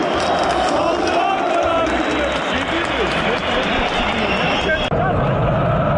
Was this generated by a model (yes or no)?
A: no